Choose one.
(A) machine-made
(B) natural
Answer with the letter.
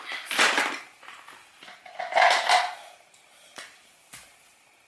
B